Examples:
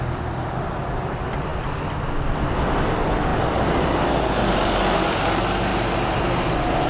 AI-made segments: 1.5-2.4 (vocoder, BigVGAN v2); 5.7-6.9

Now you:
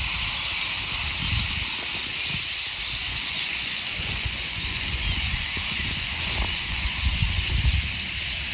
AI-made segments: 3.0-7.5 (vocoder, Vocos)

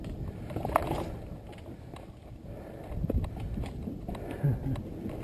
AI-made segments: none

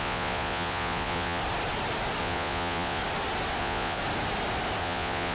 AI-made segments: 0.0-1.4 (vocoder, Vocos); 2.2-3.0; 3.6-4.0; 4.8-5.3